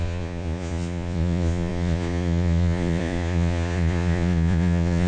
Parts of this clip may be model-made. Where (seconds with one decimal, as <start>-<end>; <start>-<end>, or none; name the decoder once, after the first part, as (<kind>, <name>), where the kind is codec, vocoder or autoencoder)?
0.0-5.1 (vocoder, Vocos)